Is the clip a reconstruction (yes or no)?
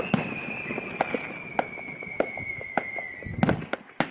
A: no